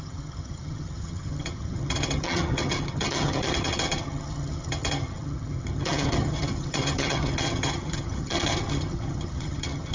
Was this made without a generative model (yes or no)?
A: no